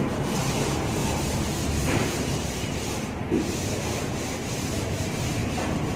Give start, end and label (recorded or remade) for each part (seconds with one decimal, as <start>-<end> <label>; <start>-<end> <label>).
0.0-5.4 remade; 5.4-6.0 recorded